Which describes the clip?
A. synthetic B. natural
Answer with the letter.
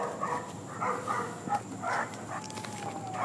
B